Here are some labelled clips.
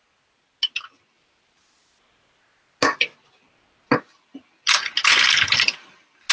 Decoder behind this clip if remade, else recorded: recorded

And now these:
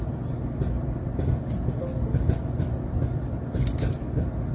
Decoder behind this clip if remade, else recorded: recorded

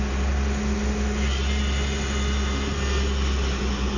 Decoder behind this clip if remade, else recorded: recorded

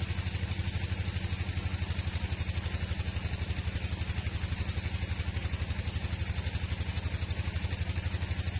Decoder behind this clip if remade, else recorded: recorded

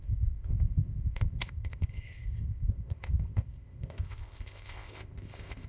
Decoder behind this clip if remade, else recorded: remade, codec, ZipCodec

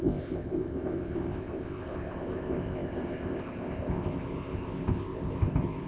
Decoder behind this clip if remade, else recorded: remade, codec, ZipCodec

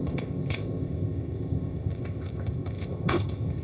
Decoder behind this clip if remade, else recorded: remade, codec, ZipCodec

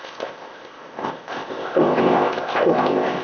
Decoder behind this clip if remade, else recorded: remade, codec, ZipCodec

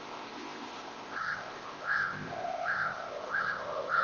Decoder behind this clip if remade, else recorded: remade, codec, ZipCodec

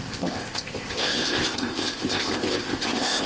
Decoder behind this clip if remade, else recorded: remade, codec, ZipCodec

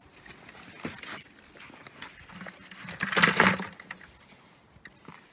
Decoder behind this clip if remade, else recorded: recorded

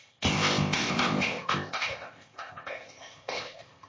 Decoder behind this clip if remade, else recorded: remade, codec, ZipCodec